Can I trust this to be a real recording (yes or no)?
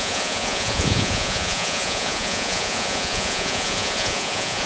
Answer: no